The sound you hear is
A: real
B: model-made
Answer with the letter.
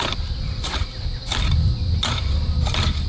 A